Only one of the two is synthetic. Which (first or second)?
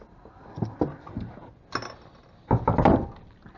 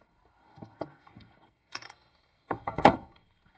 second